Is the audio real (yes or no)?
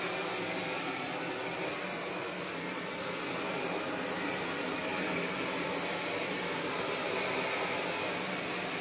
yes